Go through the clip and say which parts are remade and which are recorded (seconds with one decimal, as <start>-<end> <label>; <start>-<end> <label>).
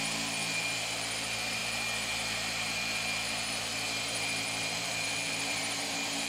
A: 0.0-6.3 remade